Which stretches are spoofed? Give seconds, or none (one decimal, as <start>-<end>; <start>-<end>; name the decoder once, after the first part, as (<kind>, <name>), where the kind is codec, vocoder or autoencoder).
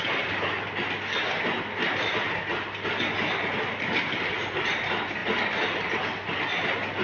none